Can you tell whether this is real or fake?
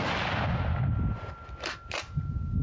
real